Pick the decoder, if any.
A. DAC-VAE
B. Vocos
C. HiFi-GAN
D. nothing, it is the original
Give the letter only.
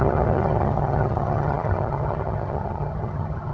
C